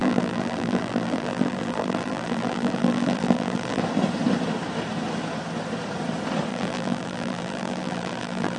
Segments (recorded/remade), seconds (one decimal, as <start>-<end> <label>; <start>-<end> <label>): 0.0-3.8 remade; 3.8-6.5 recorded; 6.5-8.6 remade

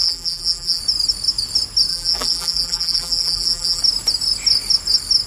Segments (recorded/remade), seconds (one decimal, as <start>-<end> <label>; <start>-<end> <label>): 0.0-0.8 remade; 0.8-1.9 recorded; 1.9-3.8 remade; 3.8-5.3 recorded

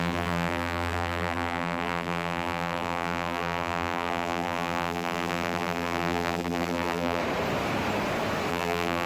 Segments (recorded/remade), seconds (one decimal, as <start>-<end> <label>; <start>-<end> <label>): 0.0-7.2 remade; 7.2-8.5 recorded; 8.5-9.1 remade

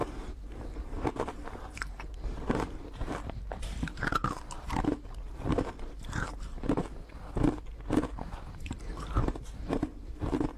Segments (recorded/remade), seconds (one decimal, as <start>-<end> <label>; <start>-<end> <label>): 0.0-6.8 remade; 6.8-8.4 recorded; 8.4-10.6 remade

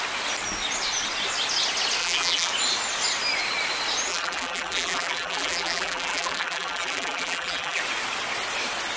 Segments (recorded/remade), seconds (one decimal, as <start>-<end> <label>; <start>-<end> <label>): 0.0-2.0 recorded; 2.0-2.5 remade; 2.5-4.1 recorded; 4.1-7.8 remade; 7.8-9.0 recorded

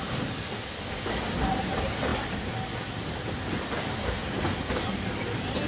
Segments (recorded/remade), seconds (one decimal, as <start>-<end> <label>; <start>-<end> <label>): 0.0-5.7 recorded